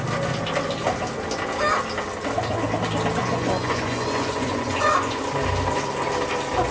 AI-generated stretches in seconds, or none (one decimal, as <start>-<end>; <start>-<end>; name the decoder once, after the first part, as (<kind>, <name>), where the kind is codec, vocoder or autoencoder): 3.2-5.2 (vocoder, Vocos)